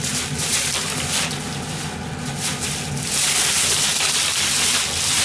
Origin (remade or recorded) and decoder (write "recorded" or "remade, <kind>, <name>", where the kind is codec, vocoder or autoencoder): recorded